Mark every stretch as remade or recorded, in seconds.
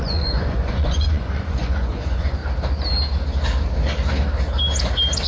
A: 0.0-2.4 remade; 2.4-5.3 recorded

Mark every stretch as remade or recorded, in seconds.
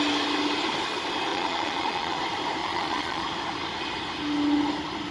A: 0.0-1.3 recorded; 1.3-2.2 remade; 2.2-2.6 recorded; 2.6-3.2 remade; 3.2-5.1 recorded